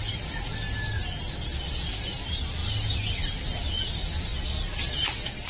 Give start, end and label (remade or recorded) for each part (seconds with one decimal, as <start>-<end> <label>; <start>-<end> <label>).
0.0-1.0 recorded; 1.0-2.1 remade; 2.1-5.5 recorded